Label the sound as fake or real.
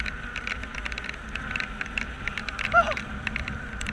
fake